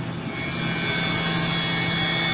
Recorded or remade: recorded